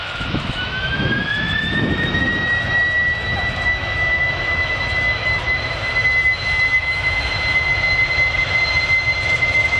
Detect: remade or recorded remade